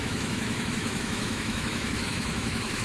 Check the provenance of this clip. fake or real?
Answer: fake